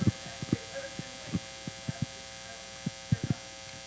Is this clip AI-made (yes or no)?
no